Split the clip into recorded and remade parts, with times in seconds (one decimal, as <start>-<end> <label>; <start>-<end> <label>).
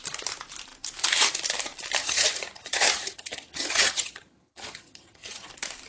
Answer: 0.0-2.0 recorded; 2.0-5.5 remade; 5.5-5.9 recorded